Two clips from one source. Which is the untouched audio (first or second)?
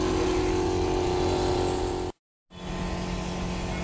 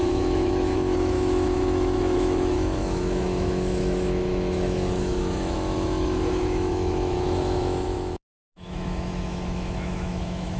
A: first